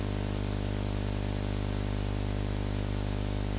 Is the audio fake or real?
real